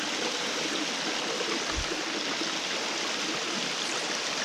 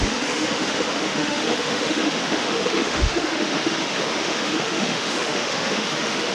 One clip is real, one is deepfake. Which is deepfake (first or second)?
second